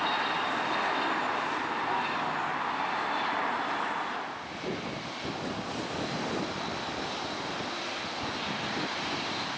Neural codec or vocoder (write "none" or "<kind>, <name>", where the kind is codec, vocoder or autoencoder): none